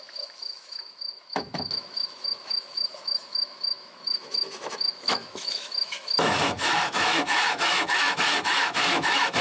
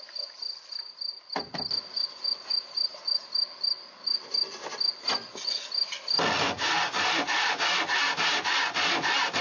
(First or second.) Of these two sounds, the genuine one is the second